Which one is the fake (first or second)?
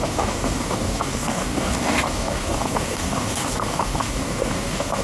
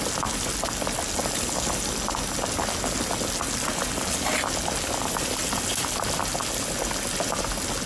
first